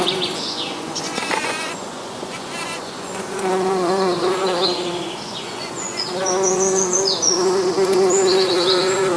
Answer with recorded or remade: remade